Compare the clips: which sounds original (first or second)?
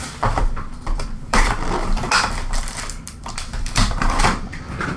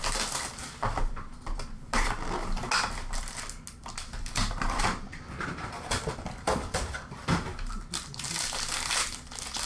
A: second